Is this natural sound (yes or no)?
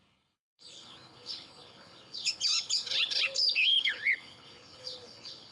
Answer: no